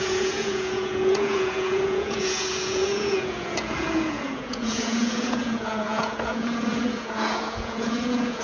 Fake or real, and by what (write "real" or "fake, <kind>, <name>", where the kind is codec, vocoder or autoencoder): fake, vocoder, Vocos